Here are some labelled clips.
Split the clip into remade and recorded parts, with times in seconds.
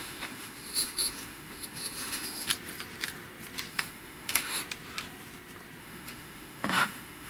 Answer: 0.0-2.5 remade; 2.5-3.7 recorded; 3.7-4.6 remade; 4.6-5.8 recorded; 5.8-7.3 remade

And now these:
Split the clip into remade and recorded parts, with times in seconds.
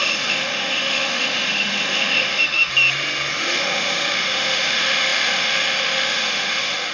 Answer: 0.0-2.7 remade; 2.7-3.3 recorded; 3.3-6.9 remade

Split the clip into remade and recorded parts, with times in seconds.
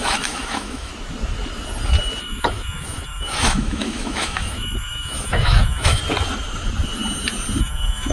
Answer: 0.0-0.9 remade; 0.9-2.2 recorded; 2.2-6.0 remade; 6.0-7.6 recorded; 7.6-8.1 remade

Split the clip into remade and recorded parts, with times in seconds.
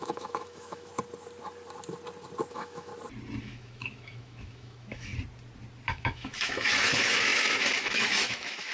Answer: 0.0-0.9 remade; 0.9-2.5 recorded; 2.5-2.9 remade; 2.9-3.4 recorded; 3.4-5.1 remade; 5.1-5.9 recorded; 5.9-8.7 remade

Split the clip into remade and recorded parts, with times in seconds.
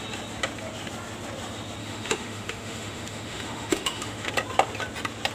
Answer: 0.0-1.8 recorded; 1.8-4.3 remade; 4.3-5.3 recorded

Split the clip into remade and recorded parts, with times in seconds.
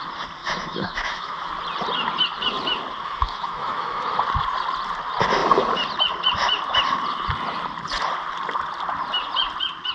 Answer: 0.0-0.4 recorded; 0.4-1.5 remade; 1.5-3.0 recorded; 3.0-4.1 remade; 4.1-9.9 recorded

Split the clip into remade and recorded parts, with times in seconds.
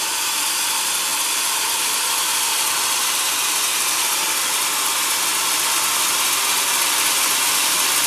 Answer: 0.0-8.1 recorded